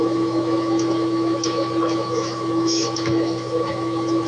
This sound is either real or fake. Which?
fake